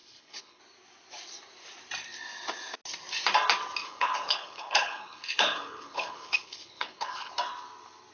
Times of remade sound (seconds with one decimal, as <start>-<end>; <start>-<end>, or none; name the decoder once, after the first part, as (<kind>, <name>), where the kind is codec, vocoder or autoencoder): 0.0-0.6 (codec, HILCodec); 3.8-7.3